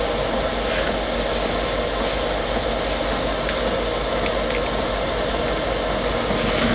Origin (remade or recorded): recorded